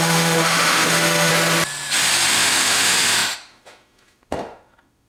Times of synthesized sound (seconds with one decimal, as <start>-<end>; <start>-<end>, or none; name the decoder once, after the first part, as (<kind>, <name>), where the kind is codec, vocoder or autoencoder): 0.0-1.3 (autoencoder, DAC-VAE); 2.3-5.1